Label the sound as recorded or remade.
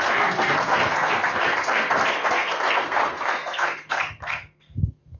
remade